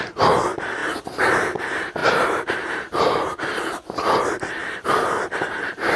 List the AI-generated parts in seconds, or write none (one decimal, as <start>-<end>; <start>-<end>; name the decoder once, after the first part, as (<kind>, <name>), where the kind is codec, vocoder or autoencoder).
0.8-1.6 (vocoder, BigVGAN v2); 2.0-3.3; 4.6-6.0